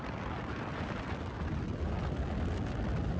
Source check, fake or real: real